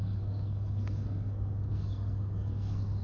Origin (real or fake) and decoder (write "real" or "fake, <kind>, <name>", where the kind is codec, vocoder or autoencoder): fake, codec, SNAC